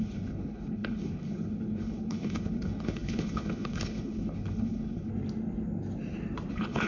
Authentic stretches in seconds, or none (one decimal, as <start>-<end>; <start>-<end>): 5.1-6.5